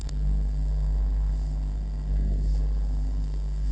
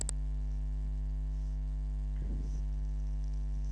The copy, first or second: first